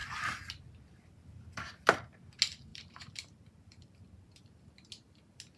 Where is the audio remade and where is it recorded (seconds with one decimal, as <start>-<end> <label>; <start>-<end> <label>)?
0.0-1.9 remade; 1.9-2.7 recorded; 2.7-4.3 remade; 4.3-5.6 recorded